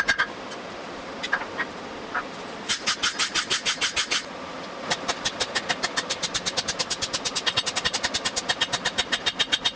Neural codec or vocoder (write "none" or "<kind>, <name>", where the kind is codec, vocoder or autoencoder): none